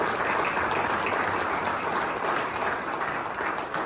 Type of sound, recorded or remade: recorded